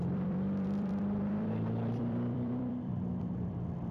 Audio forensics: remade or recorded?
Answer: remade